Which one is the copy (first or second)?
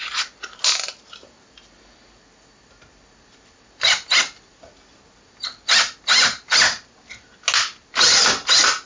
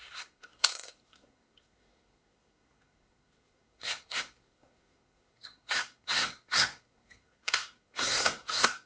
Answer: second